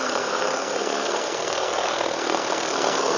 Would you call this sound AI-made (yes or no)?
yes